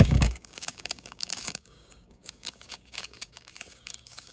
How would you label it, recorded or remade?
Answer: remade